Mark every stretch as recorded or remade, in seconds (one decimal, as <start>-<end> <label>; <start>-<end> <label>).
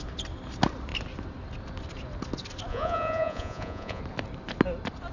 0.0-2.7 recorded; 2.7-4.0 remade; 4.0-5.1 recorded